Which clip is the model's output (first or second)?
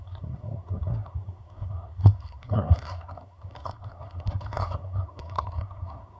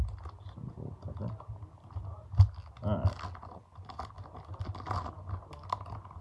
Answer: first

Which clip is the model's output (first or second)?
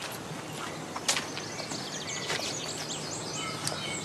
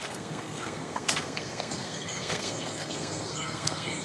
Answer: second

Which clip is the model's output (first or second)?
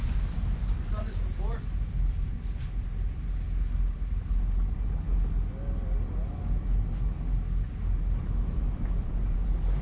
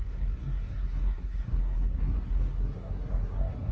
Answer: second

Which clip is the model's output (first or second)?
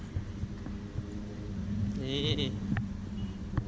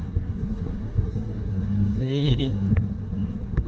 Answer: second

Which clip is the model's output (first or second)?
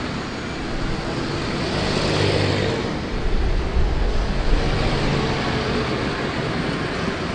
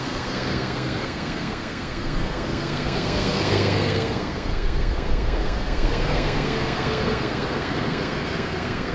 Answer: second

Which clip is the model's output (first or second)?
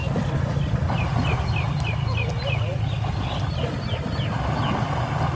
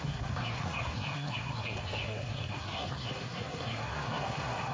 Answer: second